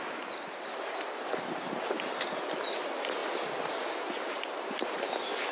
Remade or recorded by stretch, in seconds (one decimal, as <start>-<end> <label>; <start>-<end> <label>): 0.0-5.5 recorded